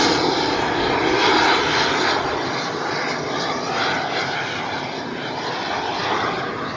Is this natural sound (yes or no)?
yes